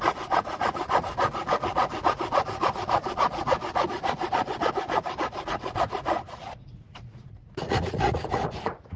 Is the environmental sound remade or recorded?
remade